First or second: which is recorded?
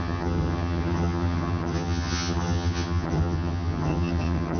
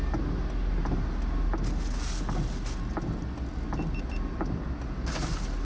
second